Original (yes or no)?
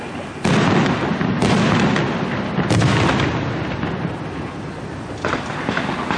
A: yes